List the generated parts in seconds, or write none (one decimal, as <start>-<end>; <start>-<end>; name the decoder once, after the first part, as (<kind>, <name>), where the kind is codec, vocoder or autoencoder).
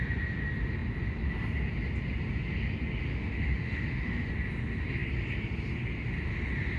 3.1-4.3 (autoencoder, DAC-VAE)